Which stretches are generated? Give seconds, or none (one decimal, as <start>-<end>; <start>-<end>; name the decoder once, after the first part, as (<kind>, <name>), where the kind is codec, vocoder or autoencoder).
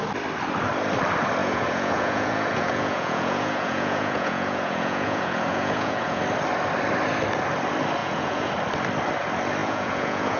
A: 1.4-6.2 (vocoder, Vocos); 8.0-8.5; 9.6-10.4